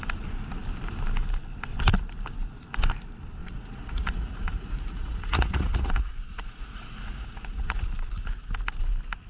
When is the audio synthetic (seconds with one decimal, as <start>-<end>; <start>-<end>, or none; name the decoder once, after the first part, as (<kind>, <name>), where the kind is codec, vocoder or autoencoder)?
3.4-7.9 (vocoder, Vocos)